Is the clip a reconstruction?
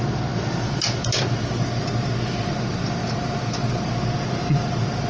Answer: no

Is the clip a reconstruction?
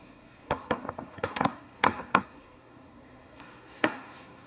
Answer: yes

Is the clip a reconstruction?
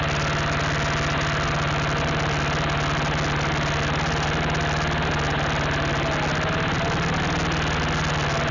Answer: no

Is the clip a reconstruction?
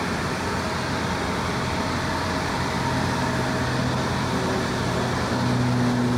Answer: no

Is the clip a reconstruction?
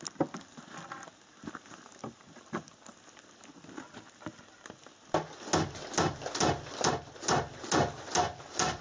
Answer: no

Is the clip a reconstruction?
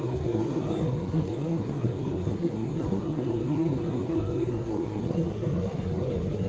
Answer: yes